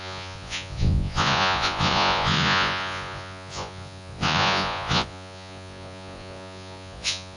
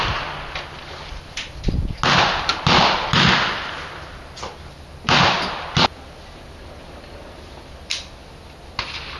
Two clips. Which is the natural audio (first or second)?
second